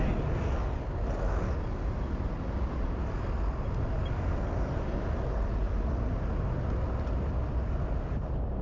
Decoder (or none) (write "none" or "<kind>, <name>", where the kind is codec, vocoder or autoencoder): none